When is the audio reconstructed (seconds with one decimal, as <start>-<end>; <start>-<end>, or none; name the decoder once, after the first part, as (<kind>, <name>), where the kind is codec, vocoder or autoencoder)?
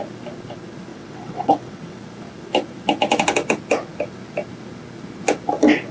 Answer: 0.9-2.0 (vocoder, WaveNeXt)